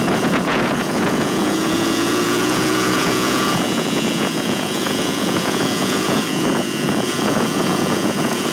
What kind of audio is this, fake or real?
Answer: fake